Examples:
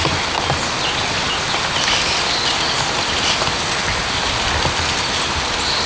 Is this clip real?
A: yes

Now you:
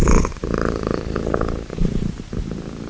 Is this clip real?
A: yes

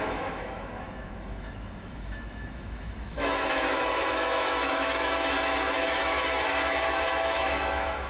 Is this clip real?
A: no